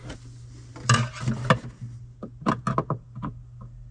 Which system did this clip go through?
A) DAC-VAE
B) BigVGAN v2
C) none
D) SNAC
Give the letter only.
C